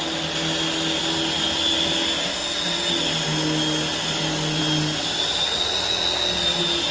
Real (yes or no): yes